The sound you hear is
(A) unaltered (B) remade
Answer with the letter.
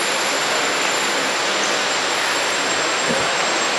A